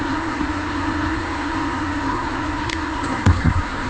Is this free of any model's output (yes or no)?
no